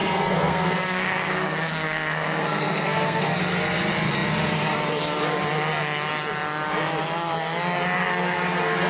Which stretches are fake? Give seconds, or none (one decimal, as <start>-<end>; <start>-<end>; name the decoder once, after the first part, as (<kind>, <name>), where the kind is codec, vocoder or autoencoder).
0.0-3.4 (codec, SNAC)